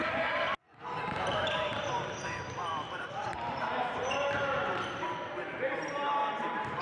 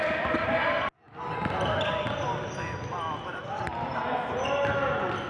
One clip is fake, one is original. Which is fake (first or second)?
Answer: first